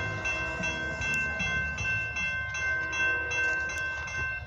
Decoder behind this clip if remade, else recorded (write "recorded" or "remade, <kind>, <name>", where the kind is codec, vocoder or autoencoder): recorded